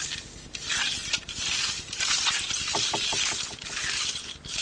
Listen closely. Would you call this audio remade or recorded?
recorded